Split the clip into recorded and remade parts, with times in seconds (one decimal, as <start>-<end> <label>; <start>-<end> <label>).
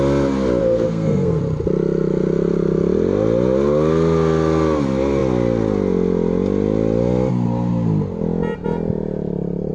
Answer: 0.0-0.6 recorded; 0.6-1.4 remade; 1.4-9.7 recorded